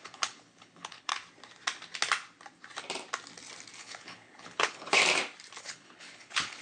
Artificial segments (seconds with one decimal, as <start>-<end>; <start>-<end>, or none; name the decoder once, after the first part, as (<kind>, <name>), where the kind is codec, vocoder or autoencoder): 0.0-1.1 (codec, HILCodec); 3.8-5.0; 5.6-6.6